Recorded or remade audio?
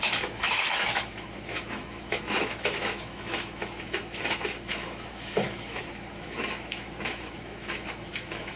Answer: remade